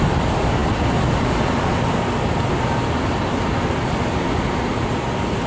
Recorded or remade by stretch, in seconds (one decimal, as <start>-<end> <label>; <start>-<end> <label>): 0.0-5.5 recorded

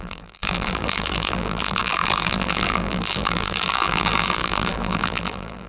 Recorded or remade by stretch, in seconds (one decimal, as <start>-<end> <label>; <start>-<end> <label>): 0.0-5.7 remade

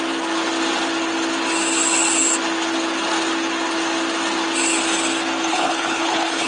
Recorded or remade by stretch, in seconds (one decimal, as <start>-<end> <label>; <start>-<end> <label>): 0.0-5.5 recorded; 5.5-6.5 remade

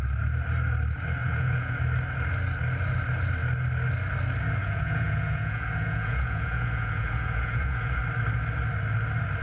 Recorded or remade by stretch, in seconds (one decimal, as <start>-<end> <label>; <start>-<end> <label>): 0.0-1.2 recorded; 1.2-1.8 remade; 1.8-4.6 recorded; 4.6-8.0 remade; 8.0-9.4 recorded

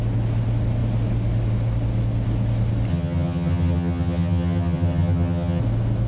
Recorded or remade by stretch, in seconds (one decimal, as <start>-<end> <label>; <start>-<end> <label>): 0.0-2.9 recorded; 2.9-5.6 remade; 5.6-6.1 recorded

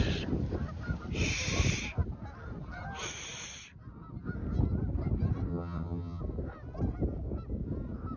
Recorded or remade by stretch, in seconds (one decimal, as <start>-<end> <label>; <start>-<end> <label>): 0.0-5.5 recorded; 5.5-6.2 remade; 6.2-8.2 recorded